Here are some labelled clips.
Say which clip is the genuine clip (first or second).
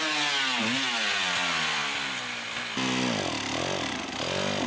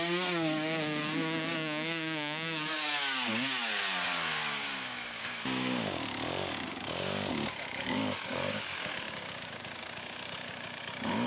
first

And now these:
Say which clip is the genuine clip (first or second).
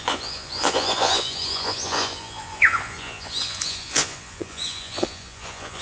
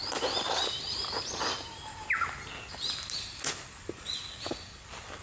second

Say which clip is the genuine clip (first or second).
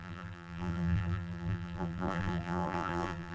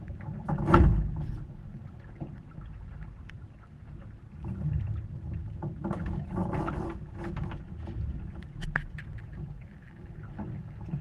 second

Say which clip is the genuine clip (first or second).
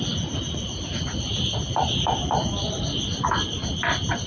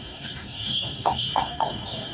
first